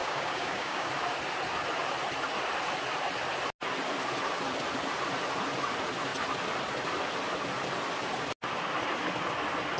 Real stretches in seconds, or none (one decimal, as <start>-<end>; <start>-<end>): 0.9-9.8